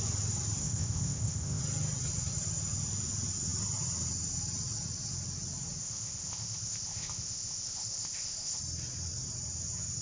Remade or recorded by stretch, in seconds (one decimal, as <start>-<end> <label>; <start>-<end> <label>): 0.0-0.6 recorded; 0.6-1.6 remade; 1.6-5.8 recorded; 5.8-8.6 remade; 8.6-10.0 recorded